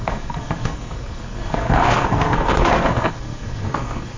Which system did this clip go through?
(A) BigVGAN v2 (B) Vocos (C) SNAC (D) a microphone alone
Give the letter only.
C